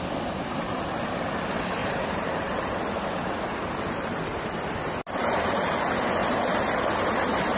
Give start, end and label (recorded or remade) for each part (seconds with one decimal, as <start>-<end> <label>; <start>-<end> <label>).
0.0-1.8 recorded; 1.8-4.7 remade; 4.7-5.2 recorded; 5.2-5.8 remade; 5.8-6.2 recorded; 6.2-6.8 remade; 6.8-7.6 recorded